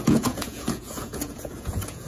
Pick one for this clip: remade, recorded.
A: remade